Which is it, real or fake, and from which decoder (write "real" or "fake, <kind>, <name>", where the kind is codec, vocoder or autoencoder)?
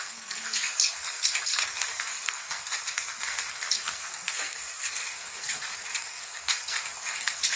fake, codec, SNAC